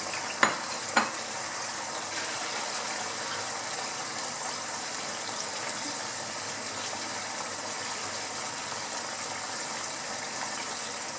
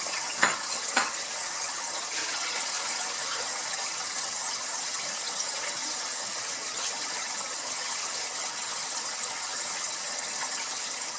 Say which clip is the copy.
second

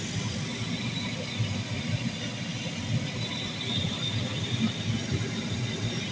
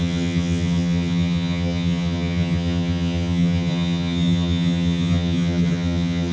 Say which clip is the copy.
second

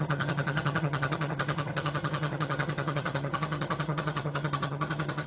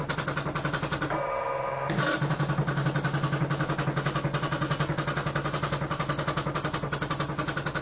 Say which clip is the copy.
first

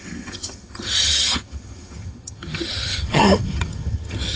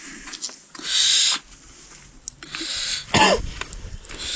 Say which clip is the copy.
first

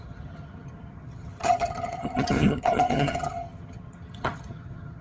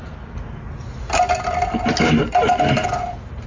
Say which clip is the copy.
first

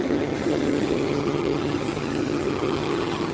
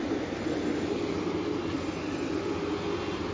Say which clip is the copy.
first